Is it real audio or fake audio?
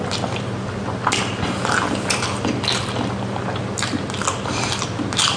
real